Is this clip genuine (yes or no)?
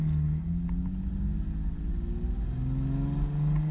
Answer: yes